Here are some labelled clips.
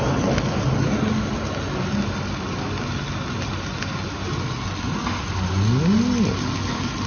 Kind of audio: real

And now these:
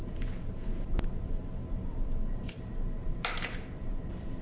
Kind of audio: fake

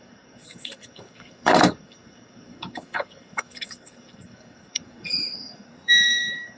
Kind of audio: fake